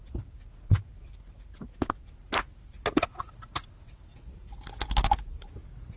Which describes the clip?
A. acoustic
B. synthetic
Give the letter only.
A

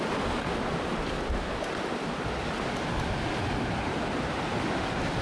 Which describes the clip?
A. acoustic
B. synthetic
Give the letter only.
A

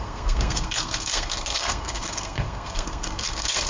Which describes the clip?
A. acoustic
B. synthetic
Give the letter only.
B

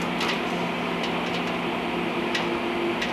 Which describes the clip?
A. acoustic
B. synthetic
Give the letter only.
A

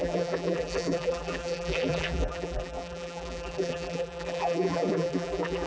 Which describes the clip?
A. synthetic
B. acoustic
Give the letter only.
A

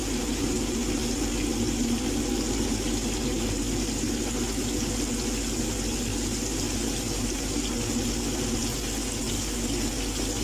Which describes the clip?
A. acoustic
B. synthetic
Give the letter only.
A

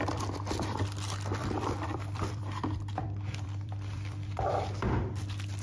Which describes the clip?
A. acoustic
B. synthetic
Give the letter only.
B